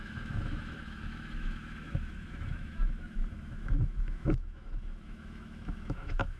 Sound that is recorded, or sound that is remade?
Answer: remade